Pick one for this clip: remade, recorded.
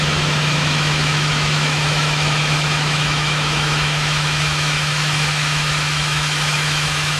remade